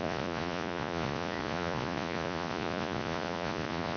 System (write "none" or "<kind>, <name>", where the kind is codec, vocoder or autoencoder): vocoder, Vocos